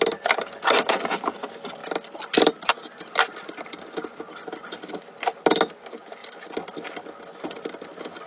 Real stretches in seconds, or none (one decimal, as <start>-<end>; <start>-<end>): 0.0-1.8; 3.6-8.3